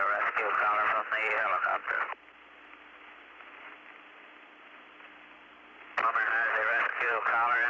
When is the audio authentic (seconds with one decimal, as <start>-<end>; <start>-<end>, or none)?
0.0-7.7